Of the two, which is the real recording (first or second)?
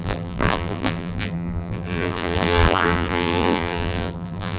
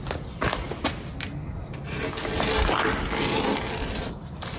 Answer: second